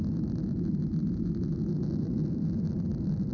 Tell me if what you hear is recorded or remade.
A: remade